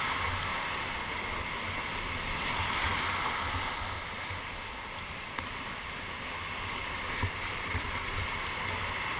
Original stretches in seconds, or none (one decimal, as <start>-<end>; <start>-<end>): 0.0-9.2